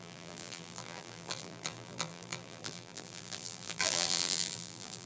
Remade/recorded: remade